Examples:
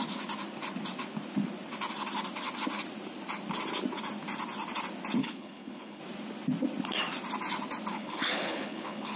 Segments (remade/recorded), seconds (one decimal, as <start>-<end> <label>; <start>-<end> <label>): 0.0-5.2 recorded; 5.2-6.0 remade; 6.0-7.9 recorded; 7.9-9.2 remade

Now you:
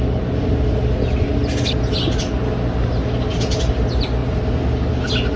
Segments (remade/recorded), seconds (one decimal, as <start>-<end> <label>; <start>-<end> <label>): 0.0-5.4 recorded

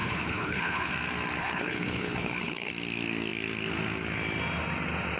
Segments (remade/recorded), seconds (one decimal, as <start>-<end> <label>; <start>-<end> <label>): 0.0-0.9 remade; 0.9-1.4 recorded; 1.4-2.7 remade; 2.7-5.2 recorded

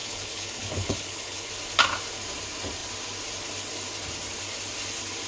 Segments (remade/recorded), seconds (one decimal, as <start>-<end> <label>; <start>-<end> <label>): 0.0-1.5 remade; 1.5-5.3 recorded